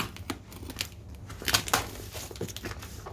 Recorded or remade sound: recorded